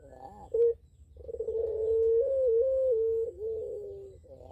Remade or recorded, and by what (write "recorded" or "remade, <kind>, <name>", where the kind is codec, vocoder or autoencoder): recorded